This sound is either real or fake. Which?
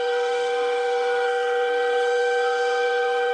fake